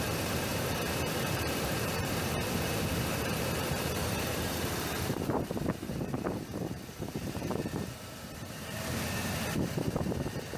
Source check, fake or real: fake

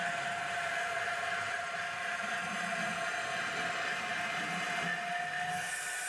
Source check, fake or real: real